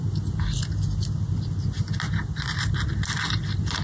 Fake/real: real